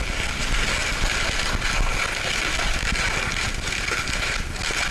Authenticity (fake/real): real